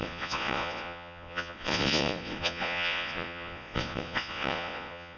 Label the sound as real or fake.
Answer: fake